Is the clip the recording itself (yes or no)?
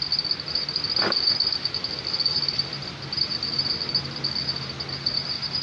yes